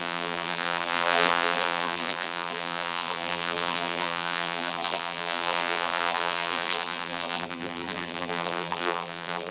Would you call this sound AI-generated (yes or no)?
yes